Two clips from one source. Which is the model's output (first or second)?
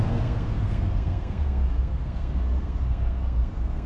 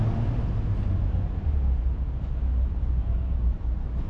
first